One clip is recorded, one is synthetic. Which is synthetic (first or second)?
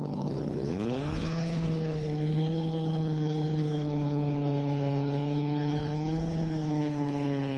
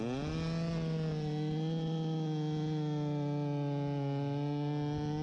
first